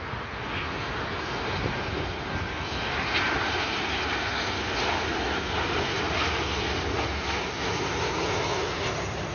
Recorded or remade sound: recorded